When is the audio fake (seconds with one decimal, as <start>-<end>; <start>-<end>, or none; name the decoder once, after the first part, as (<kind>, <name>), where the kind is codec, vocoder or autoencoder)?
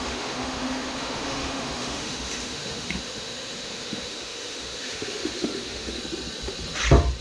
0.0-6.0 (autoencoder, DAC-VAE)